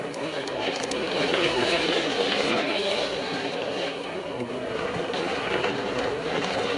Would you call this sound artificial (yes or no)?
yes